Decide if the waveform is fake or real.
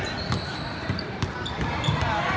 real